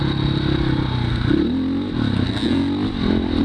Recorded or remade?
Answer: recorded